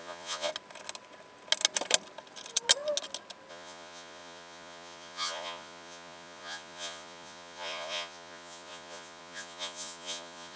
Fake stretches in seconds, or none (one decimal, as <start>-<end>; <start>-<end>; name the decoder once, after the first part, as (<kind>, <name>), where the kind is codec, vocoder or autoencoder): 0.0-0.5 (vocoder, Vocos); 3.5-10.6